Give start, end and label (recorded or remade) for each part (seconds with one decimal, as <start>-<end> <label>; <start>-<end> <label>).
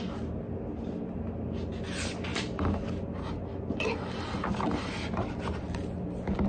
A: 0.0-6.5 recorded